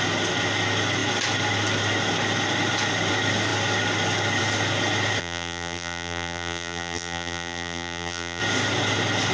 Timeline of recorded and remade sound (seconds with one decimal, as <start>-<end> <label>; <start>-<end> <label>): 0.0-5.2 recorded; 5.2-8.4 remade; 8.4-9.3 recorded